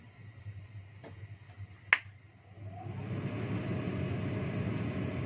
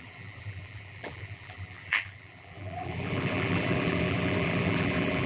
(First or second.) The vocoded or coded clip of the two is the second